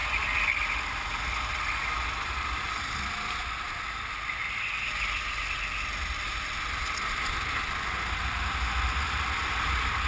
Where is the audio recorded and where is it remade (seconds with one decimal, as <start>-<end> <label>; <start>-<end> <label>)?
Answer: 0.0-10.1 recorded